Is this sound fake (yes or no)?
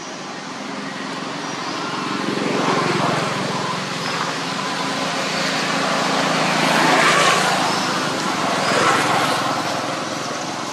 no